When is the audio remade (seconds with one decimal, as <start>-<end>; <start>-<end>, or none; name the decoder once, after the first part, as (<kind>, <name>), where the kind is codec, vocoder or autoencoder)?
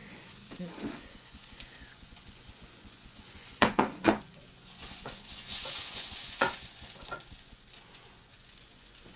0.0-9.2 (vocoder, Vocos)